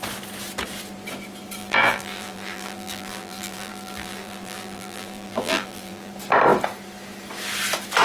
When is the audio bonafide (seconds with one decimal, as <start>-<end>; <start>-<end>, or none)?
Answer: 0.0-1.6; 6.1-8.0